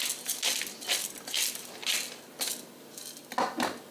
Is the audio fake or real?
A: real